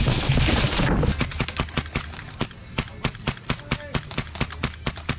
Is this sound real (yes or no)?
yes